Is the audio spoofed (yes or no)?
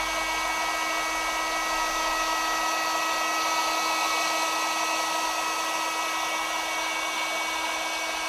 no